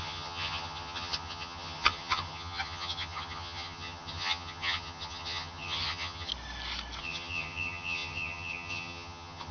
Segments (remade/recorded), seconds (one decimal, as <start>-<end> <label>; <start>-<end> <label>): 0.0-6.3 remade; 6.3-7.0 recorded; 7.0-9.5 remade